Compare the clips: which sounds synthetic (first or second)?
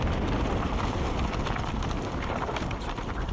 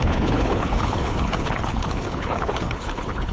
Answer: second